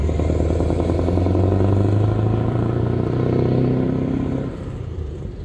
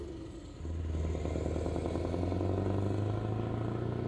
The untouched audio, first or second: second